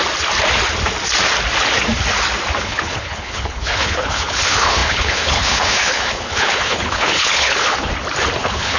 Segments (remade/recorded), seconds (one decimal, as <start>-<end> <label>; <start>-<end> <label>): 0.0-2.6 recorded; 2.6-7.9 remade; 7.9-8.4 recorded; 8.4-8.8 remade